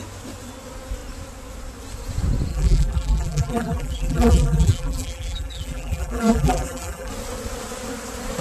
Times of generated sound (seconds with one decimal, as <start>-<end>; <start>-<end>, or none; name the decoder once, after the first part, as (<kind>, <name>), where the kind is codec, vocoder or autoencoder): 2.5-7.1 (vocoder, BigVGAN v2)